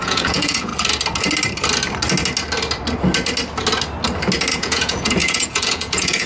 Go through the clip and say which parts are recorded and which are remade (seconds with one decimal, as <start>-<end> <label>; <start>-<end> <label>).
0.0-0.7 remade; 0.7-4.5 recorded; 4.5-6.3 remade